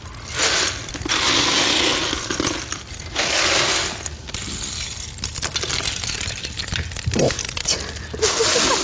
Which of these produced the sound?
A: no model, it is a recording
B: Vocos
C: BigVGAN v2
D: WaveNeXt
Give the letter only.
A